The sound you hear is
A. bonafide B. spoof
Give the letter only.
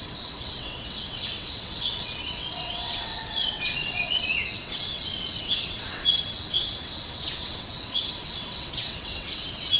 B